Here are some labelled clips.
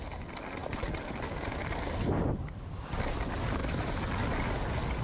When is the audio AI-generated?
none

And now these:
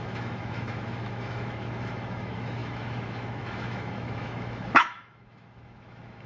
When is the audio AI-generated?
0.0-6.3

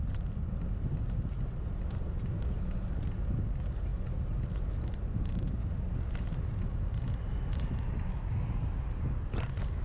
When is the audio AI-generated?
none

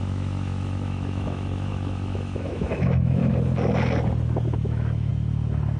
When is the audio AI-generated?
0.0-3.2; 4.5-5.1

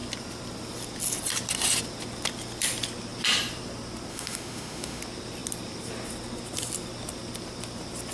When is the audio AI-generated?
4.1-5.0

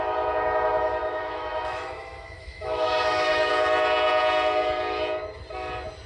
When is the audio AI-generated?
1.0-3.5